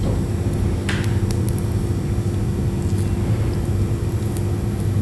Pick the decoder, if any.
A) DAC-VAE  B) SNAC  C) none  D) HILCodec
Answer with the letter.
C